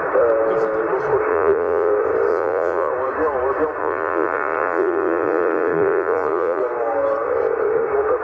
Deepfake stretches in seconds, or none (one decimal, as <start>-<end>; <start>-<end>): 1.3-1.9; 2.3-2.9; 3.8-6.6